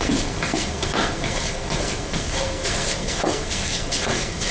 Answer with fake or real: fake